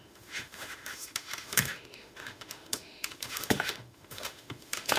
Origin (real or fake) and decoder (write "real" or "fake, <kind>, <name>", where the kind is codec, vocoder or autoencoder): fake, autoencoder, DAC-VAE